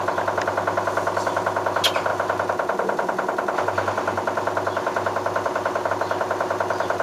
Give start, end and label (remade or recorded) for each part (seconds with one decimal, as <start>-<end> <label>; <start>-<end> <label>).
0.0-7.0 recorded